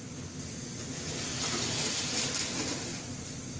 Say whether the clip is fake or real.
real